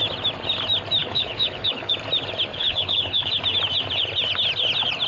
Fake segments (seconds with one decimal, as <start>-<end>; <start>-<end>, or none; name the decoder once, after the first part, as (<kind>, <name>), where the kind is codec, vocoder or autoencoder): 1.0-1.9 (codec, HILCodec); 2.5-3.3

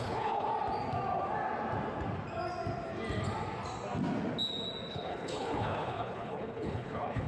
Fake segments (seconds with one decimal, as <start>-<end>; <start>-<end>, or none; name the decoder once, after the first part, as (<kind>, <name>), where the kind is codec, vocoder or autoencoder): 0.0-0.5 (codec, HILCodec); 4.9-7.3